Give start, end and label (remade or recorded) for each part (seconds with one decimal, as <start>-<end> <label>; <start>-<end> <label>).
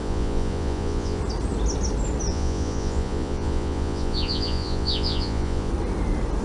0.0-1.2 remade; 1.2-2.3 recorded; 2.3-5.7 remade; 5.7-6.4 recorded